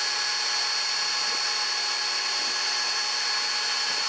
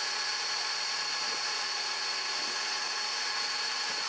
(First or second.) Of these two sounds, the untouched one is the first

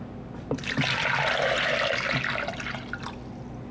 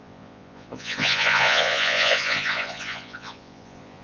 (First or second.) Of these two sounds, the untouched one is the first